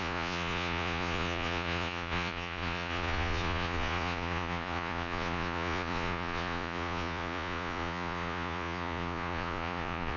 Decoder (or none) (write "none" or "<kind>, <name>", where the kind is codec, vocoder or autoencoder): vocoder, Vocos